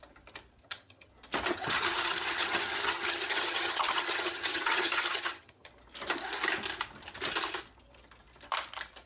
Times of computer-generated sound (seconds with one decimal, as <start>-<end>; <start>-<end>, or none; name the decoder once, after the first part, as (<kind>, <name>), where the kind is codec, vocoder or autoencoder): 0.6-1.1 (vocoder, HiFi-GAN); 1.5-5.7